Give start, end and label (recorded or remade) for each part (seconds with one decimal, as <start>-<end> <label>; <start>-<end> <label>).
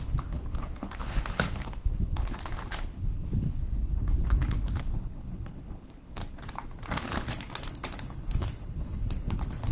0.0-6.2 remade; 6.2-7.7 recorded; 7.7-9.7 remade